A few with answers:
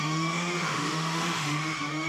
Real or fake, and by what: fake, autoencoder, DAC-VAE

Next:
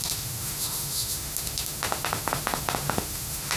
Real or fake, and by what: fake, autoencoder, DAC-VAE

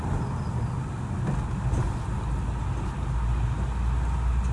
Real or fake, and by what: real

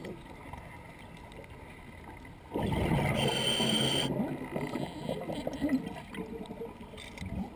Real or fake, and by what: real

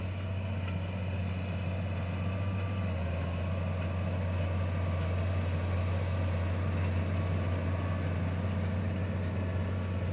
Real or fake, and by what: real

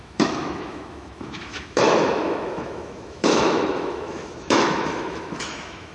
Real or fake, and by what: fake, autoencoder, DAC-VAE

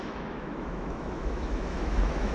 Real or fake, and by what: fake, autoencoder, DAC-VAE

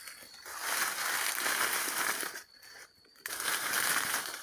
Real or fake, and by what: real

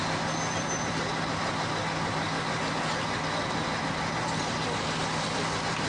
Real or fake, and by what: real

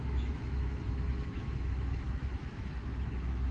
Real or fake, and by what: fake, autoencoder, DAC-VAE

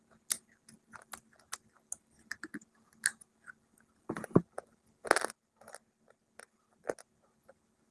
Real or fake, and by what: real